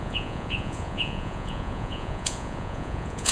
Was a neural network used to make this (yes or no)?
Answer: yes